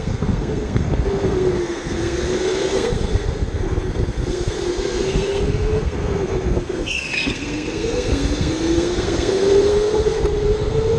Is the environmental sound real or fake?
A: fake